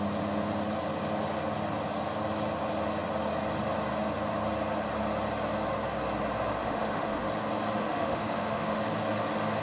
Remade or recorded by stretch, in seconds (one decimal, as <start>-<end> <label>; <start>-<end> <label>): 0.0-6.6 recorded; 6.6-7.2 remade; 7.2-7.8 recorded; 7.8-8.8 remade; 8.8-9.6 recorded